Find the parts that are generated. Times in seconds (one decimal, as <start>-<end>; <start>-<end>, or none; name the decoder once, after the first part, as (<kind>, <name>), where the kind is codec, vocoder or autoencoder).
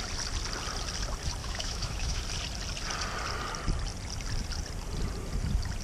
1.4-2.2 (autoencoder, DAC-VAE)